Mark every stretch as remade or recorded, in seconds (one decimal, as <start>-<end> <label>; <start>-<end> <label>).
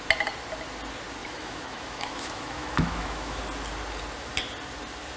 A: 0.0-1.2 recorded; 1.2-3.4 remade; 3.4-5.2 recorded